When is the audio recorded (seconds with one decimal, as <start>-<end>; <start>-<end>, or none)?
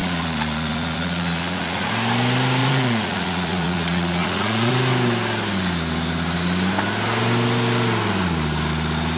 1.9-2.6; 4.7-9.2